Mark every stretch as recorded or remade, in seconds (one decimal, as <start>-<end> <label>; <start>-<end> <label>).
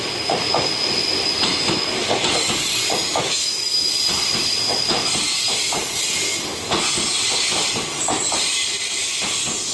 0.0-3.0 recorded; 3.0-3.9 remade; 3.9-9.7 recorded